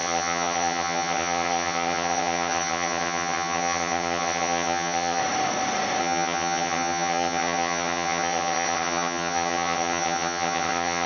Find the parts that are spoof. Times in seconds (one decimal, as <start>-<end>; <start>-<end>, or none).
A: 0.0-5.2; 6.0-11.1